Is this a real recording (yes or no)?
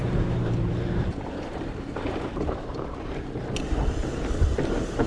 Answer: no